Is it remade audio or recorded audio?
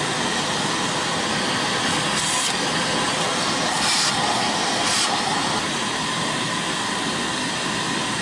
recorded